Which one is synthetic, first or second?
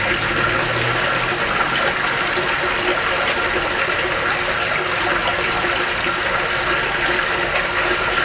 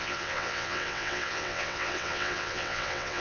second